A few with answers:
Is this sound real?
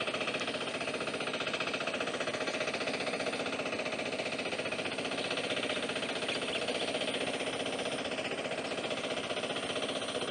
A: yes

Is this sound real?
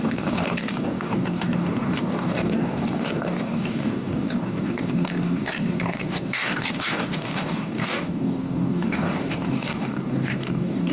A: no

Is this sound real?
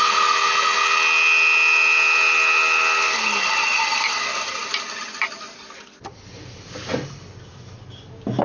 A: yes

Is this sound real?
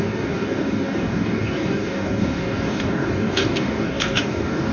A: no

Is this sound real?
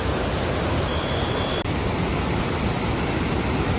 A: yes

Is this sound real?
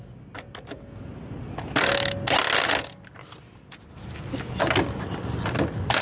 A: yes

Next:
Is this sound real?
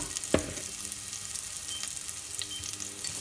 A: yes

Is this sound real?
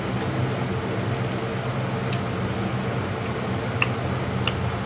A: yes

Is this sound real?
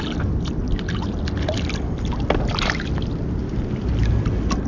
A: yes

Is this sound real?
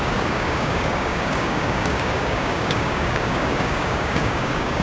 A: no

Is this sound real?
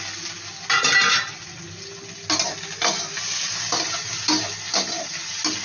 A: yes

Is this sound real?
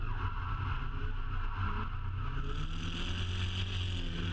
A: yes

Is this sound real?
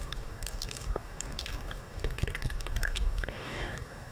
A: no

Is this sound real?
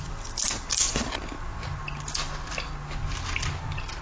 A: yes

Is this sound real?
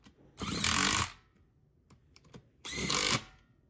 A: yes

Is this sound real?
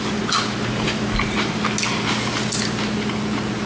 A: yes